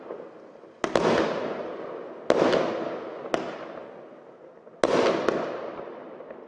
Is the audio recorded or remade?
recorded